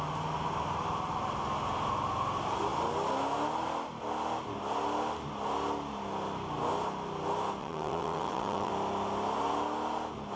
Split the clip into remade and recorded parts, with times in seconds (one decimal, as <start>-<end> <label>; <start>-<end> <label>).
0.0-7.6 recorded; 7.6-8.7 remade; 8.7-10.4 recorded